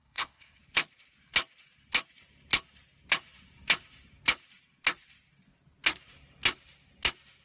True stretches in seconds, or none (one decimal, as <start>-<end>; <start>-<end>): 0.6-7.4